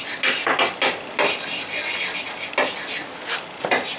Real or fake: real